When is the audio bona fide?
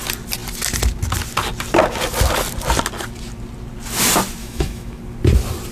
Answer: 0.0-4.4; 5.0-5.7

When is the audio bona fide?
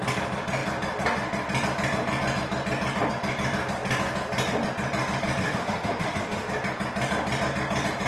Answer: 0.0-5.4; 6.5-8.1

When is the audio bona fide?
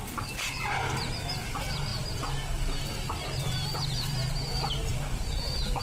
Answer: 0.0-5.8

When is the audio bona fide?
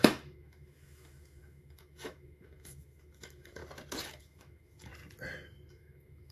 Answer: 3.6-4.2; 4.9-5.7